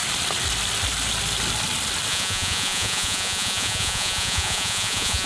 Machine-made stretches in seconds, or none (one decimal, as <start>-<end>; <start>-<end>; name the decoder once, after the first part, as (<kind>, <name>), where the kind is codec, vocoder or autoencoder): 2.1-5.3 (vocoder, Vocos)

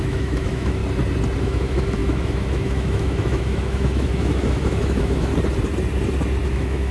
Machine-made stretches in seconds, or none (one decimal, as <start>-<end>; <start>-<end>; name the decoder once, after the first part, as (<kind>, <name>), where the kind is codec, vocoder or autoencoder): 0.0-0.8 (autoencoder, DAC-VAE); 1.4-5.3; 6.5-6.9

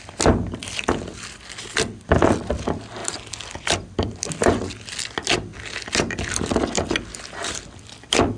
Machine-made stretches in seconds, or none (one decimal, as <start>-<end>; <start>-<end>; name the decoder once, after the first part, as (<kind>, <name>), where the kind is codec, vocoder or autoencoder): none

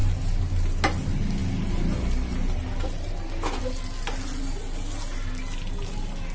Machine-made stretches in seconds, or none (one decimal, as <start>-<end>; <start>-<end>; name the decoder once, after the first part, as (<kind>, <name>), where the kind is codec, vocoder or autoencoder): none

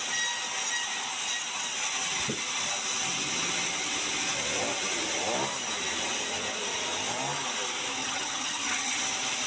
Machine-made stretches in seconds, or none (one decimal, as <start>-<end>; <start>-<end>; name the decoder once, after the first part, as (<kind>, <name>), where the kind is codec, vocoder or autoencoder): 8.0-9.0 (vocoder, HiFi-GAN)

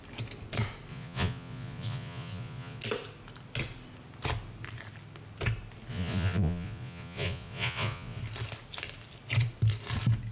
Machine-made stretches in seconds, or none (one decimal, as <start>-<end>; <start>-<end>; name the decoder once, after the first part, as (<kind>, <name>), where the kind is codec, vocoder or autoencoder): 0.9-2.8 (vocoder, Vocos); 5.9-8.2

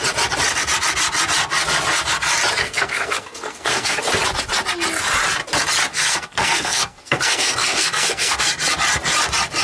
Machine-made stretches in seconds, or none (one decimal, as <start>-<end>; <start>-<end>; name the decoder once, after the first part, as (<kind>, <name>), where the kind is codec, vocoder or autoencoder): 2.6-4.0 (codec, SNAC); 5.9-8.5